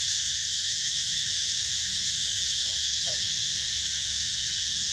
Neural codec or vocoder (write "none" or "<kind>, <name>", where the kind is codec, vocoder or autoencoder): codec, SNAC